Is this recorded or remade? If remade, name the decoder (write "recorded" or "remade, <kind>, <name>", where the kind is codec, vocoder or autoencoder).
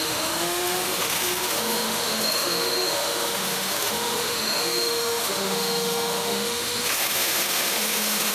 remade, autoencoder, DAC-VAE